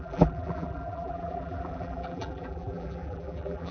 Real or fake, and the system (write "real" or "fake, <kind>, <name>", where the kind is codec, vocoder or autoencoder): fake, vocoder, BigVGAN v2